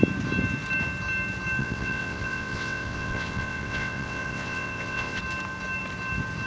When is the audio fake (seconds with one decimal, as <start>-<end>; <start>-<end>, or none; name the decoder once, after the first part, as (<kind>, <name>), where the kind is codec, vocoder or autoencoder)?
1.6-5.2 (vocoder, WaveNeXt)